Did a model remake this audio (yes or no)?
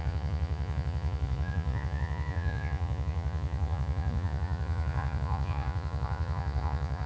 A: yes